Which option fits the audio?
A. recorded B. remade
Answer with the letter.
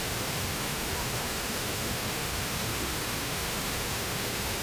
B